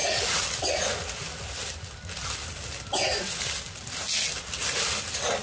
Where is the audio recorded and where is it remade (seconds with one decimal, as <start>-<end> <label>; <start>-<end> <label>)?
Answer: 0.0-5.4 recorded